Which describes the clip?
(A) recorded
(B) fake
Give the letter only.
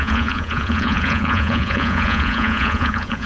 B